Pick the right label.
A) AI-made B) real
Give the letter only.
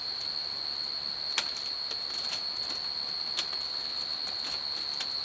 B